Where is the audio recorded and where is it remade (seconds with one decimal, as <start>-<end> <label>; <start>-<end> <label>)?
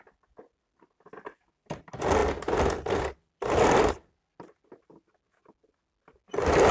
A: 0.0-6.7 recorded